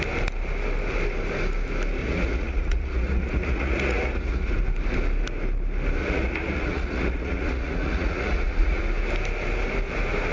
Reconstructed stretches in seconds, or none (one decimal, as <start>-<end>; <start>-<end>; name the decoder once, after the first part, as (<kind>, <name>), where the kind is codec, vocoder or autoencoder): 2.0-4.5 (vocoder, Vocos); 6.0-8.8